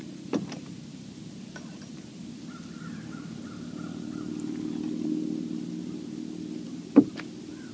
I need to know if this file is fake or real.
real